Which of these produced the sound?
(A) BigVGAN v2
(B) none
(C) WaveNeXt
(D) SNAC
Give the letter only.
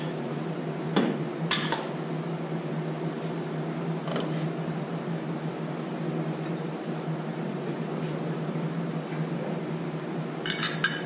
B